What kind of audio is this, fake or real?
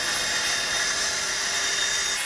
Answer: real